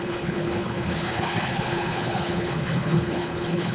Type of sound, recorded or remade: remade